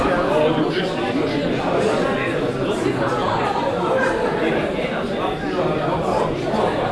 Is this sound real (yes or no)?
yes